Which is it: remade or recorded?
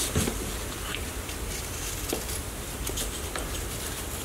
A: recorded